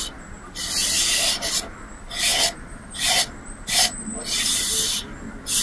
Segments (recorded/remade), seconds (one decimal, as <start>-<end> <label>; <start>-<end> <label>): 0.0-5.6 recorded